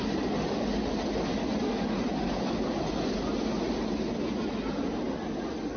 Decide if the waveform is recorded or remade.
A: recorded